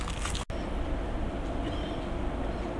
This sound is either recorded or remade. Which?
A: recorded